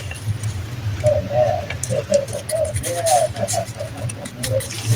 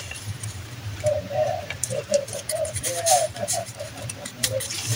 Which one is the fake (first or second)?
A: second